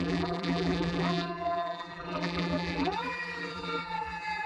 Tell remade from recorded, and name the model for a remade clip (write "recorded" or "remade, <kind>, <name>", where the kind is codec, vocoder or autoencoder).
remade, vocoder, BigVGAN v2